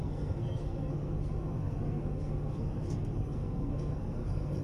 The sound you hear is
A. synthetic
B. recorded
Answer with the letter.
A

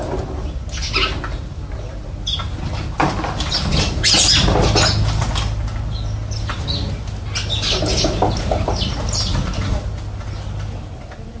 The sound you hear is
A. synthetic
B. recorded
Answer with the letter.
B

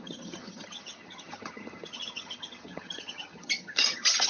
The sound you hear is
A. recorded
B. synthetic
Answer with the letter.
B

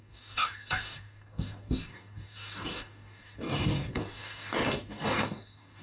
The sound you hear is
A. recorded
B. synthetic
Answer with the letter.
B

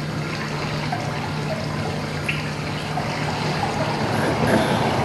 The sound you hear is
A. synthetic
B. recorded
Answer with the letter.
B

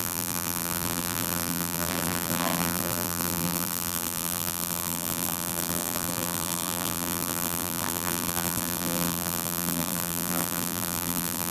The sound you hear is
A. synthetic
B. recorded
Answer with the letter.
A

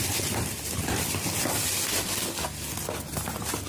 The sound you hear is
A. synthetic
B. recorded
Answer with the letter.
B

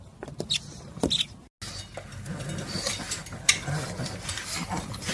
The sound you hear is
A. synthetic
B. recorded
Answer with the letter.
B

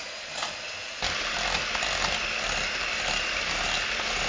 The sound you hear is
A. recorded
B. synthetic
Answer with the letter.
A